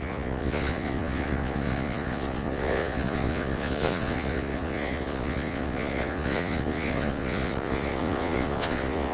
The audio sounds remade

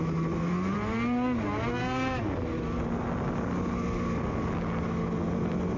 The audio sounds recorded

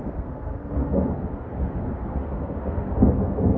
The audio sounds remade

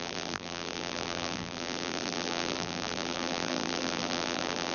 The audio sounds remade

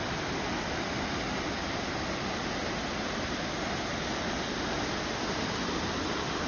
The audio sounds recorded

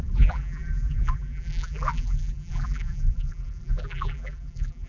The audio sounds remade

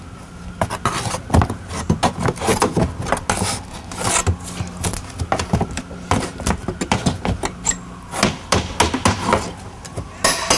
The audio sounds recorded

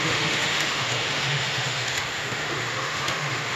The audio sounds remade